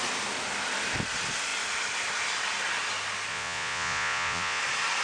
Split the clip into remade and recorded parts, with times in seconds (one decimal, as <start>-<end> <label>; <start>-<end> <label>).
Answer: 0.0-3.3 recorded; 3.3-4.6 remade; 4.6-5.0 recorded